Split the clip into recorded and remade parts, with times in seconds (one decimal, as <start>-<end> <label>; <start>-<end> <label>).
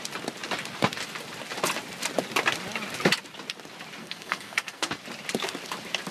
0.0-4.0 recorded; 4.0-4.9 remade; 4.9-6.1 recorded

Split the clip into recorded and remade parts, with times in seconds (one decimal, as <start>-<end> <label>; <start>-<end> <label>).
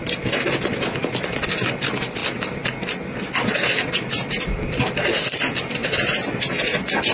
0.0-7.1 recorded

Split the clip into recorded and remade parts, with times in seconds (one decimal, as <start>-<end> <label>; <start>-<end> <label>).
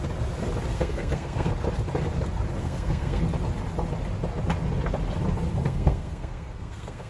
0.0-0.7 recorded; 0.7-1.5 remade; 1.5-2.6 recorded; 2.6-3.2 remade; 3.2-5.6 recorded; 5.6-7.1 remade